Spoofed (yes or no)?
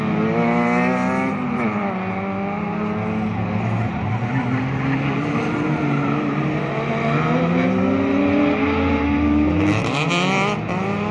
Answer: no